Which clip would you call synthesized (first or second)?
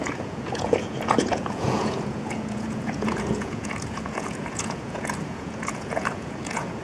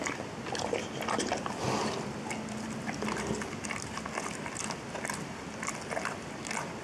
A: first